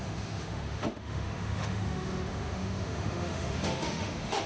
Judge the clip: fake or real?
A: fake